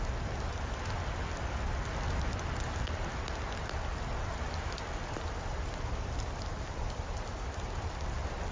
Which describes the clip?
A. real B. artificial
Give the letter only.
A